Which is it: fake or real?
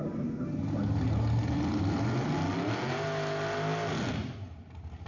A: real